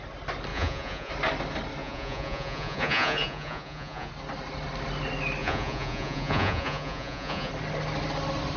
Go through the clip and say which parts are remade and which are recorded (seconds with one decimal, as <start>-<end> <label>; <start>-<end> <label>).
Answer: 0.0-0.5 recorded; 0.5-1.1 remade; 1.1-1.8 recorded; 1.8-4.1 remade; 4.1-5.4 recorded; 5.4-7.5 remade; 7.5-8.6 recorded